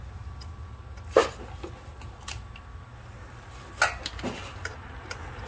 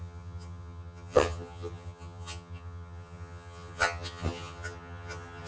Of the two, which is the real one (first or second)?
first